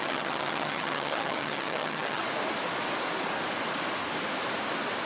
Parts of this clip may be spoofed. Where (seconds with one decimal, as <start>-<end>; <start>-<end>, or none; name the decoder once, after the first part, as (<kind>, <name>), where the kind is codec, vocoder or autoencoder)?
0.0-2.2 (vocoder, HiFi-GAN)